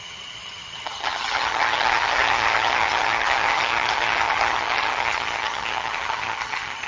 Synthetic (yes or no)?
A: yes